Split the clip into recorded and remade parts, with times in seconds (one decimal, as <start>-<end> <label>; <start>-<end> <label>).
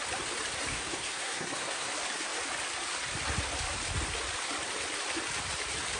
0.0-0.7 recorded; 0.7-1.9 remade; 1.9-6.0 recorded